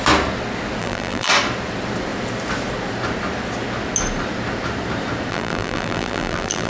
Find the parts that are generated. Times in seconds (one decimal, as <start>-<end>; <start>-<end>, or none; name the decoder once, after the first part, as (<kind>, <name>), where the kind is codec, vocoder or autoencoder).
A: 0.8-1.3 (vocoder, BigVGAN v2); 5.3-6.7